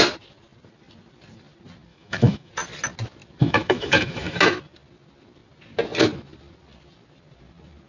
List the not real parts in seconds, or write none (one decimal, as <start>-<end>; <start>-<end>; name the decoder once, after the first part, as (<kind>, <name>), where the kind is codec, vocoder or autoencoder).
1.9-2.5 (autoencoder, DAC-VAE); 3.4-4.4